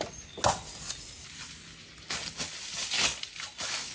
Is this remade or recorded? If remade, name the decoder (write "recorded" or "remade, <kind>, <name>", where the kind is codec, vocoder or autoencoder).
recorded